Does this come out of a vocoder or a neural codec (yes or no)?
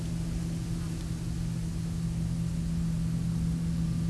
no